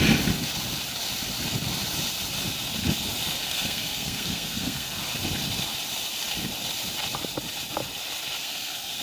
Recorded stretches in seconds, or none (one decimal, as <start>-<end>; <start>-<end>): 0.0-3.4; 5.0-8.4